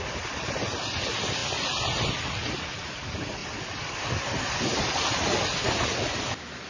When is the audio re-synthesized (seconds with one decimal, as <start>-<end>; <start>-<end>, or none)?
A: 3.4-4.2